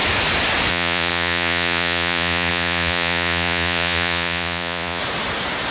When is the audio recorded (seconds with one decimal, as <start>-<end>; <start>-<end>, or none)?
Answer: 0.0-0.7; 5.0-5.7